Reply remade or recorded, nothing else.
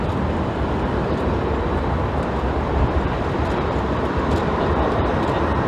remade